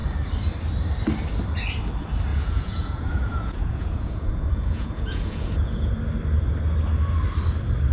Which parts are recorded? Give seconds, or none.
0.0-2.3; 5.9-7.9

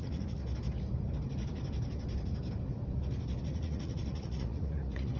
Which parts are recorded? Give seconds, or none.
0.4-3.4